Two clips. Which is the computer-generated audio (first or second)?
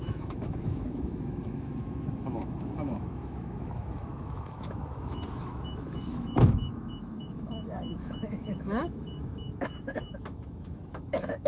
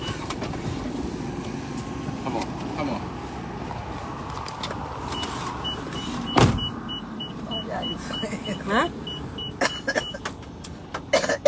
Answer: first